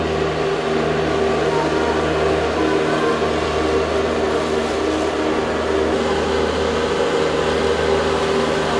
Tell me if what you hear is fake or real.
real